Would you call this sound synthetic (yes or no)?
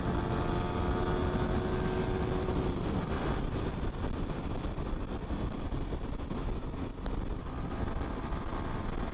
no